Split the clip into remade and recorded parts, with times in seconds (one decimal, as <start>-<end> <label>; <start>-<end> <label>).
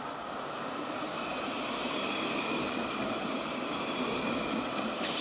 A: 0.0-5.2 remade